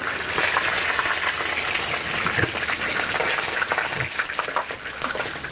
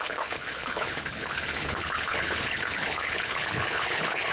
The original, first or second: first